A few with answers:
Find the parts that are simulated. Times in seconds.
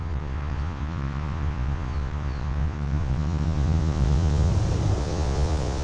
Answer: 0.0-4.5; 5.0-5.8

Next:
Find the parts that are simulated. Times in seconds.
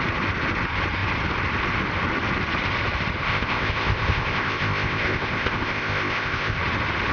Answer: 3.2-6.6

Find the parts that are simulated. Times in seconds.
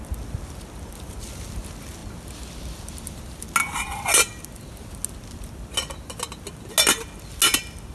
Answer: none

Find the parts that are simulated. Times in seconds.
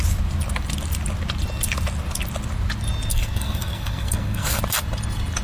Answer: 3.1-4.6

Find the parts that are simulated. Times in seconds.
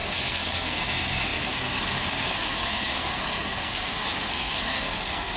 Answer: 0.0-5.4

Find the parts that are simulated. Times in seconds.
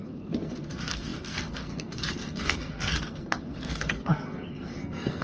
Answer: 0.0-5.2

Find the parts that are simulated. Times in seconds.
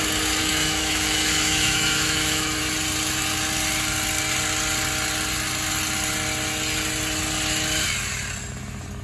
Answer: 0.4-2.6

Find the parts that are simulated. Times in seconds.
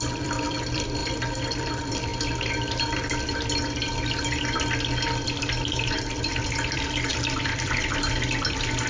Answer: 0.0-1.0; 1.6-2.1; 5.7-8.9